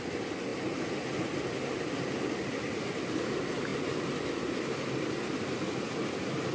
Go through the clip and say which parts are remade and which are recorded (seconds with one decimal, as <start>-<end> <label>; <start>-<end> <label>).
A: 0.0-6.5 recorded